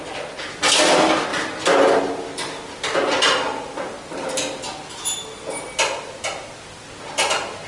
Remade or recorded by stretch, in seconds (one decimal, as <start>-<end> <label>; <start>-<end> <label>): 0.0-7.7 recorded